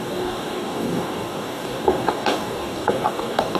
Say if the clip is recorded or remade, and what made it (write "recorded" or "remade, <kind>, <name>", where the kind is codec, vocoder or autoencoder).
remade, codec, DAC